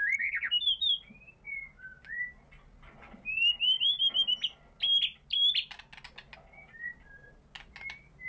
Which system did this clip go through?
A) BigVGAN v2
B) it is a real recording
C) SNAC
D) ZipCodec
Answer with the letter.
B